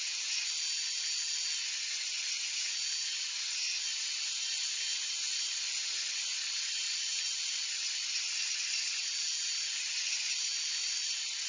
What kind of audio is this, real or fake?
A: real